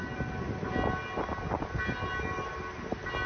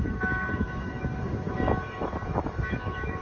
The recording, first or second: first